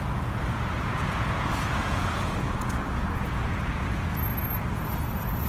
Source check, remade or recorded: remade